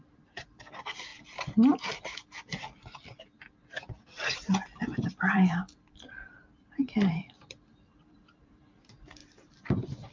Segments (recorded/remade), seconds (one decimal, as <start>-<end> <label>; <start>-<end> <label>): 0.0-1.1 remade; 1.1-2.5 recorded; 2.5-10.1 remade